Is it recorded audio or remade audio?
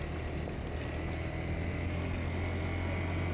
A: recorded